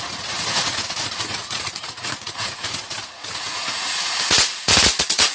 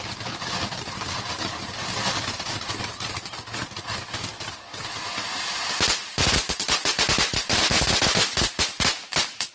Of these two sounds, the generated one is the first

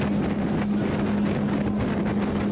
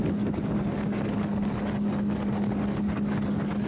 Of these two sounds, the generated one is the second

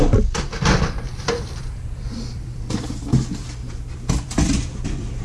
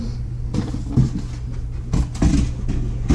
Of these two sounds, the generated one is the first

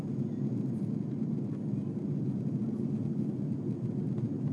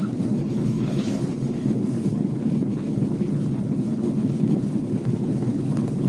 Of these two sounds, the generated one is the second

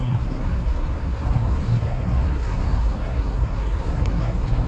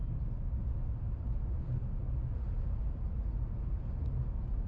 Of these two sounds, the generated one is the first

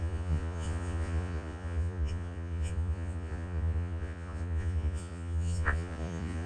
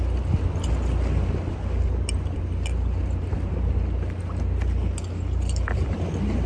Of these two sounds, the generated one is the first